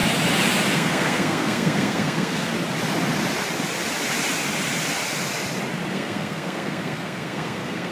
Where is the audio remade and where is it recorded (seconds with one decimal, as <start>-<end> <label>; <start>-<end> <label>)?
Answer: 0.0-0.7 recorded; 0.7-2.5 remade; 2.5-5.9 recorded; 5.9-7.9 remade